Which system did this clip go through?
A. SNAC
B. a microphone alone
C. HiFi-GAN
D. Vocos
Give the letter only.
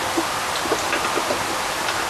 B